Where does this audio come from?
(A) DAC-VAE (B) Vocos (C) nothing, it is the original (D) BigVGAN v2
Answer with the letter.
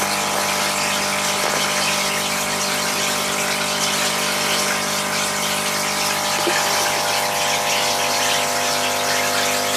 C